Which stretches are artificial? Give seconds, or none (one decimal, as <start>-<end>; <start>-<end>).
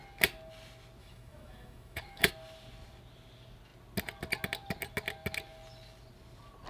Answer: 1.0-2.3